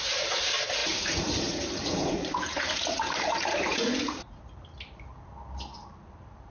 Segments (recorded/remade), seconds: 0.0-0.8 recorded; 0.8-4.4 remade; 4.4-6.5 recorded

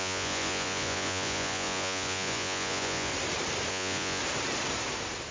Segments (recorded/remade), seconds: 0.0-3.1 remade; 3.1-3.7 recorded; 3.7-4.2 remade; 4.2-5.3 recorded

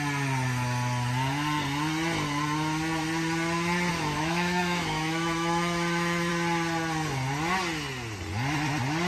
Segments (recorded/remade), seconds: 0.0-3.9 recorded; 3.9-6.3 remade; 6.3-9.1 recorded

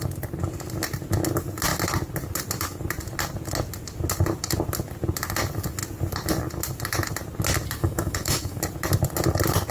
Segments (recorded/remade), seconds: 0.0-7.8 recorded; 7.8-8.6 remade; 8.6-9.7 recorded